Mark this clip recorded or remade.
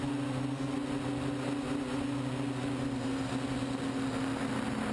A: recorded